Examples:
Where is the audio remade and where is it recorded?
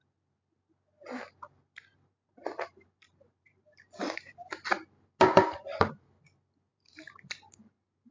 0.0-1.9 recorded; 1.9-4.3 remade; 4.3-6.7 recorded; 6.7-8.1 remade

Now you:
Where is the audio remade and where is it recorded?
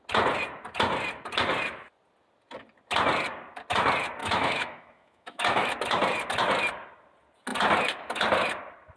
0.0-4.2 recorded; 4.2-5.7 remade; 5.7-9.0 recorded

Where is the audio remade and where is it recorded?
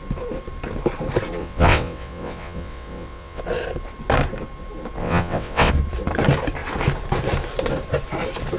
0.0-1.4 recorded; 1.4-3.4 remade; 3.4-5.0 recorded; 5.0-5.7 remade; 5.7-8.6 recorded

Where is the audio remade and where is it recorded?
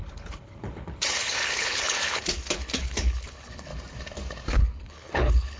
0.0-3.7 remade; 3.7-4.5 recorded; 4.5-5.6 remade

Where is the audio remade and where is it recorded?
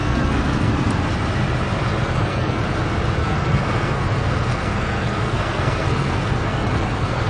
0.0-0.7 remade; 0.7-2.0 recorded; 2.0-2.6 remade; 2.6-3.2 recorded; 3.2-7.3 remade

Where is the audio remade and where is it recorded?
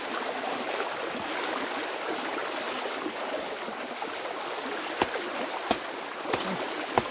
0.0-7.1 recorded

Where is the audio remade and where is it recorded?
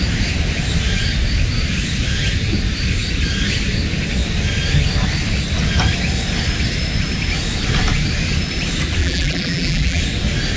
0.0-9.0 recorded; 9.0-10.0 remade; 10.0-10.6 recorded